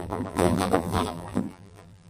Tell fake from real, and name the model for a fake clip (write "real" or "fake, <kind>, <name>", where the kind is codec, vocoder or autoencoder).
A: fake, vocoder, BigVGAN v2